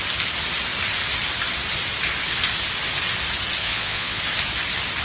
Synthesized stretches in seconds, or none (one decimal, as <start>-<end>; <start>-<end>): 3.6-4.2